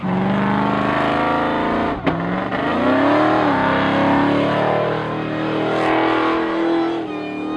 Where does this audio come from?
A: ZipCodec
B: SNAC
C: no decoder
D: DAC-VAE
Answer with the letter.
C